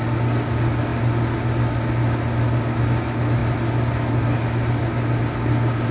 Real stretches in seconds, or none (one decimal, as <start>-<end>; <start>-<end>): 0.0-5.9